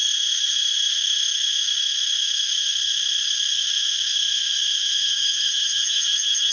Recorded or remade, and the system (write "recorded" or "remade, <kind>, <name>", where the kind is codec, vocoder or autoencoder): remade, autoencoder, DAC-VAE